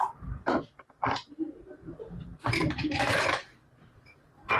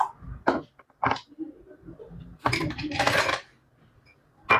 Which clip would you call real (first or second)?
second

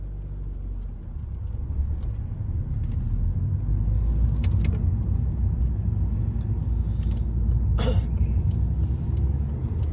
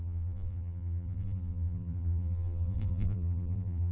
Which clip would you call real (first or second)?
first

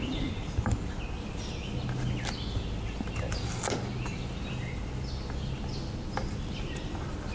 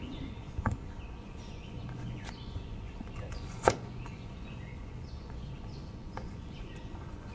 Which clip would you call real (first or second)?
first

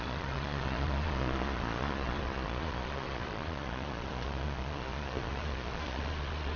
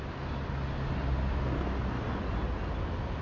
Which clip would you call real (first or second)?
second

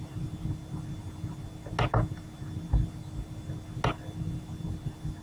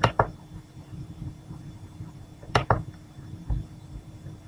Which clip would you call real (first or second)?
first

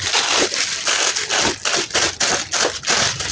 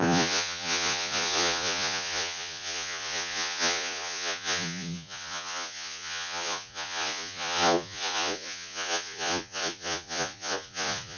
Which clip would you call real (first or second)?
first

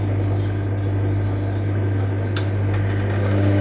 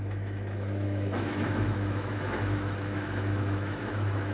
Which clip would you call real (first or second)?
first